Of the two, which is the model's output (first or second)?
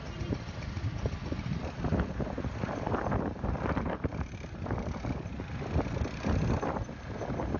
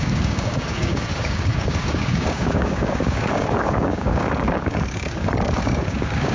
second